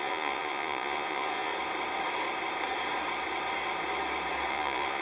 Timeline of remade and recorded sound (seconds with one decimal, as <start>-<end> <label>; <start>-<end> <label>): 0.0-1.5 remade; 1.5-4.5 recorded; 4.5-5.0 remade